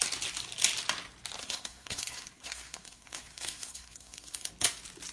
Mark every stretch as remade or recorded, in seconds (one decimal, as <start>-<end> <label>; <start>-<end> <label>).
0.0-1.4 recorded; 1.4-4.5 remade; 4.5-5.1 recorded